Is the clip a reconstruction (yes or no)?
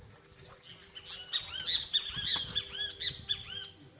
no